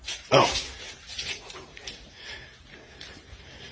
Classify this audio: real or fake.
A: real